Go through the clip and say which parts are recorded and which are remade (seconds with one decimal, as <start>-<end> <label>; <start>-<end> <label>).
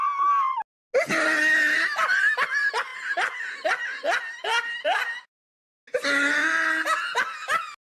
0.0-7.8 recorded